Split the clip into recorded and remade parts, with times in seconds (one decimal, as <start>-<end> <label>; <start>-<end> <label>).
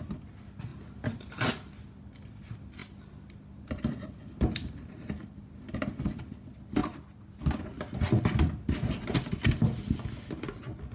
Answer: 0.0-10.9 recorded